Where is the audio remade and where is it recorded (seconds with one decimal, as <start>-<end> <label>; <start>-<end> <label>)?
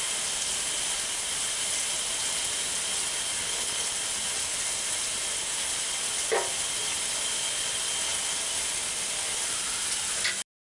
0.0-3.4 recorded; 3.4-3.9 remade; 3.9-10.6 recorded